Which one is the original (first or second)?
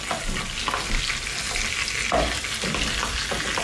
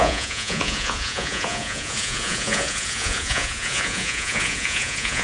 first